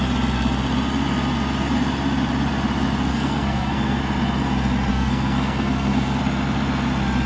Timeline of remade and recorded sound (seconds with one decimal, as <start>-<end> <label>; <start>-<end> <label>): 0.0-3.1 recorded; 3.1-4.0 remade; 4.0-4.9 recorded; 4.9-6.2 remade; 6.2-7.3 recorded